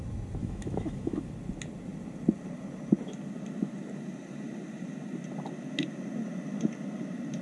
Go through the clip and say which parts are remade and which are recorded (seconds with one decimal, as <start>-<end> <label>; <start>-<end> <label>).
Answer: 0.0-0.4 recorded; 0.4-1.3 remade; 1.3-7.4 recorded

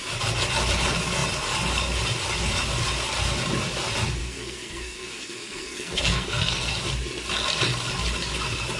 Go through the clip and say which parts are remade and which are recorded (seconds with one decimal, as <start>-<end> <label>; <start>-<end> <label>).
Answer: 0.0-4.2 recorded; 4.2-6.7 remade; 6.7-8.8 recorded

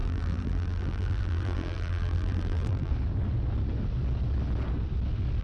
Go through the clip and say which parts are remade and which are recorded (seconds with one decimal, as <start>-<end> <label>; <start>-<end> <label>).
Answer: 0.0-2.9 remade; 2.9-5.4 recorded

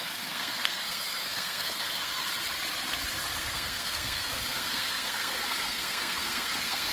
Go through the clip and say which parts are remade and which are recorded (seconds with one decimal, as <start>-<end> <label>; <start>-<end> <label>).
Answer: 0.0-2.2 remade; 2.2-3.4 recorded; 3.4-6.9 remade

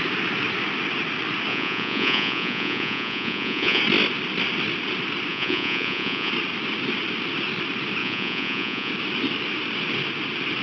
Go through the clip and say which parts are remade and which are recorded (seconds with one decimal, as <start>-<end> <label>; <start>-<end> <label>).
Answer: 0.0-1.5 recorded; 1.5-3.8 remade; 3.8-5.3 recorded; 5.3-6.3 remade; 6.3-8.0 recorded; 8.0-8.9 remade; 8.9-10.6 recorded

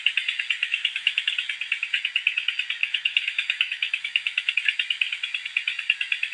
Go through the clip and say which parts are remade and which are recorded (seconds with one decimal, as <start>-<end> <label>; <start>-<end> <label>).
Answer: 0.0-0.6 recorded; 0.6-1.2 remade; 1.2-2.8 recorded; 2.8-4.5 remade; 4.5-6.3 recorded

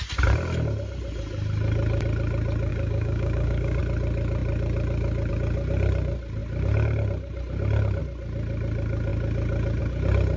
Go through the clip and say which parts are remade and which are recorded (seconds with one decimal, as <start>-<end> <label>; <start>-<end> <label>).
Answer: 0.0-2.7 recorded; 2.7-3.8 remade; 3.8-10.4 recorded

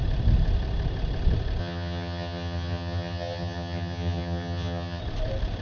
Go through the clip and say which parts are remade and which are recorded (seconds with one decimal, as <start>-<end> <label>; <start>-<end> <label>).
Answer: 0.0-1.6 recorded; 1.6-5.0 remade; 5.0-5.6 recorded